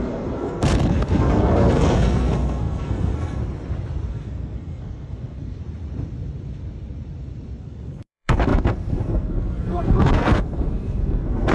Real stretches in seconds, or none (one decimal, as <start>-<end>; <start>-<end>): 3.4-4.1; 5.6-7.6